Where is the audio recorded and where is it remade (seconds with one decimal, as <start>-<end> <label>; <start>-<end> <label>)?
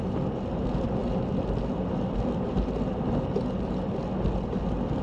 0.0-5.0 recorded